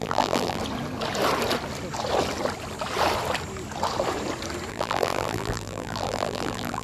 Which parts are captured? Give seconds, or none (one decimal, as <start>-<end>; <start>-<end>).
0.6-4.7